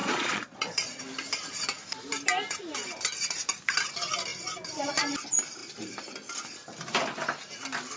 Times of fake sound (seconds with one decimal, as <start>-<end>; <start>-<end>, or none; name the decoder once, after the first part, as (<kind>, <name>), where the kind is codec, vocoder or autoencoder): 0.0-1.0 (vocoder, Vocos)